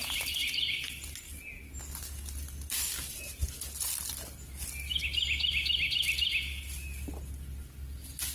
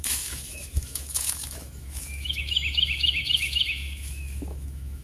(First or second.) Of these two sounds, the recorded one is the first